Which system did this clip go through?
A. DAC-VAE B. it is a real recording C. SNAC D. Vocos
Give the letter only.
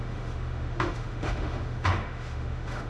A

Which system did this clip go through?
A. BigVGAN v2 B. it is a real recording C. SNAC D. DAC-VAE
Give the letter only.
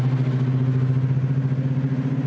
B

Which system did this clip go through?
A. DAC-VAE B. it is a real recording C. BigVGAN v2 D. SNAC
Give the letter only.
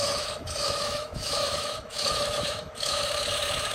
A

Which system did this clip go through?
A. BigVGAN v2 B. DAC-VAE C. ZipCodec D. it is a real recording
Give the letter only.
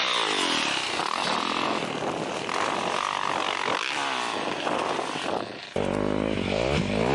D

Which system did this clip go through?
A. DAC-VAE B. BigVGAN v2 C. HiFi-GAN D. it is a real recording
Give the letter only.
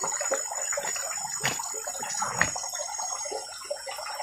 D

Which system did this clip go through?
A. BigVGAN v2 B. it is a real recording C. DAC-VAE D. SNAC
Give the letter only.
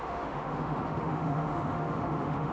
C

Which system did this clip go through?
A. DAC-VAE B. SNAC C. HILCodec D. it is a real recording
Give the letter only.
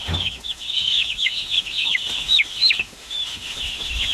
A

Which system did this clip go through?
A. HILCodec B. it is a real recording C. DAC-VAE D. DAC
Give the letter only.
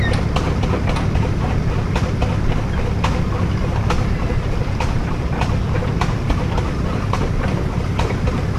B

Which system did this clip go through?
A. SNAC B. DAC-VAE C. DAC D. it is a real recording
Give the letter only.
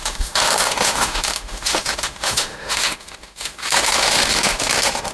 B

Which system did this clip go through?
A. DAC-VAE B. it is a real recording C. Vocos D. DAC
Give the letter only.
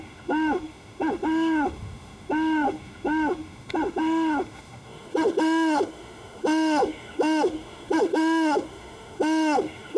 A